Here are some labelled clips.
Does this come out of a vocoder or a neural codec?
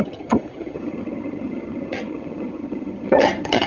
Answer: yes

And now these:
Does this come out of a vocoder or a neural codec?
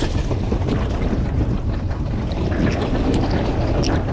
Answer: no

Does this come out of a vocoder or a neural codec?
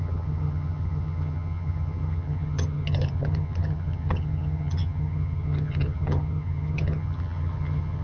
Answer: yes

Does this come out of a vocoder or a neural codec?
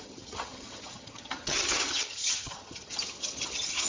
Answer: yes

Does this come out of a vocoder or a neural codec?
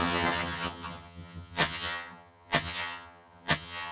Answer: yes